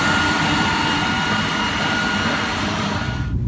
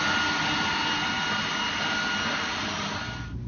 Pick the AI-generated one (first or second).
first